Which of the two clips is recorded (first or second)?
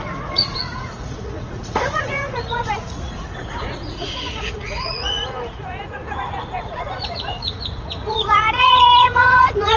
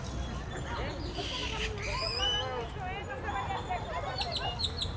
second